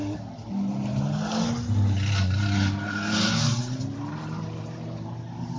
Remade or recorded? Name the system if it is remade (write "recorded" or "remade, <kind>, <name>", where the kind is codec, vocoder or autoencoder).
recorded